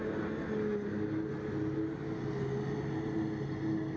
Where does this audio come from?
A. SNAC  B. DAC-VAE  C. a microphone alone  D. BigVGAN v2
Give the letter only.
C